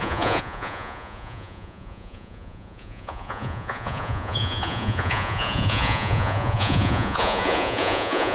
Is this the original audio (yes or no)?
no